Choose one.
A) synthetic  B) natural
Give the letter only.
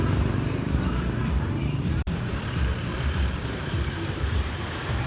A